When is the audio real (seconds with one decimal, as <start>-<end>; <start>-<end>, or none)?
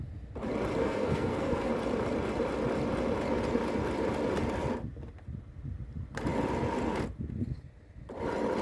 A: 0.0-0.8; 1.7-8.6